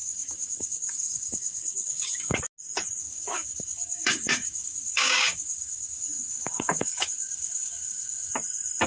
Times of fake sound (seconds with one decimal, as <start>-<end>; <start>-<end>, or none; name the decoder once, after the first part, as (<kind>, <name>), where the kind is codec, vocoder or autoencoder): 0.0-2.4 (codec, DAC); 3.0-8.3

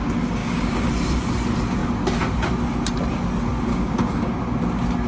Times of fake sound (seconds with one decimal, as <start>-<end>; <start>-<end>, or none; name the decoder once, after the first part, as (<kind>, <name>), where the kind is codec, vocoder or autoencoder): 0.4-0.9 (codec, DAC); 3.7-4.3

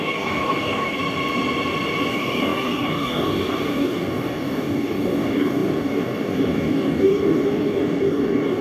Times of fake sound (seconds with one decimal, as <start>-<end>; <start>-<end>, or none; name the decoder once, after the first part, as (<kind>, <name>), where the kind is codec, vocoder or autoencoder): 0.0-1.0 (codec, DAC); 2.1-8.6

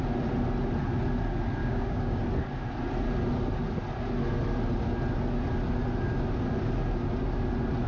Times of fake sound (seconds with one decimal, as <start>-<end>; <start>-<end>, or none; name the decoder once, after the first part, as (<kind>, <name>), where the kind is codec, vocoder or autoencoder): 1.6-2.2 (codec, DAC)

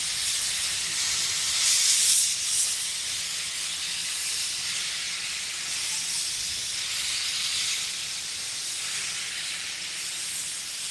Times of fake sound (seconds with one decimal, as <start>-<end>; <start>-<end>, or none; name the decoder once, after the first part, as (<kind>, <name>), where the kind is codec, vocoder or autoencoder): none

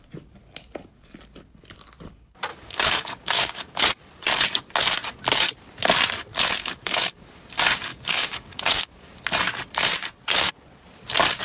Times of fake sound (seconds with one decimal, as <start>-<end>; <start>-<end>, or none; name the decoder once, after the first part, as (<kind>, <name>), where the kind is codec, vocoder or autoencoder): 2.5-3.8 (codec, DAC); 6.6-7.3; 7.9-9.0